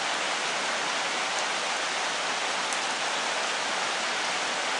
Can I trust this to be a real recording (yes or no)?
yes